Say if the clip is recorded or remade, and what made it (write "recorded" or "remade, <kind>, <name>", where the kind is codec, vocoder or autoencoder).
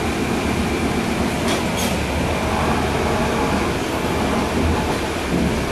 recorded